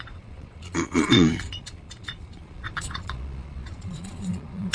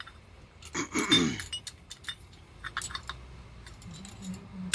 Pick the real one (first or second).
second